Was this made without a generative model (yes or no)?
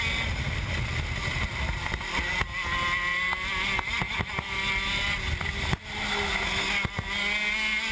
yes